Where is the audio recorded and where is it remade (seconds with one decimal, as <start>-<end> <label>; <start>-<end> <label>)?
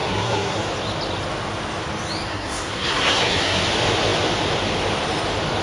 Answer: 0.0-0.6 remade; 0.6-2.3 recorded; 2.3-3.6 remade; 3.6-5.6 recorded